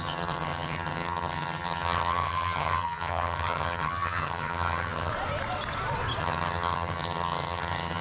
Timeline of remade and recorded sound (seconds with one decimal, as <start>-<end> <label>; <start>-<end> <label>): 0.0-5.1 remade; 5.1-6.2 recorded; 6.2-8.0 remade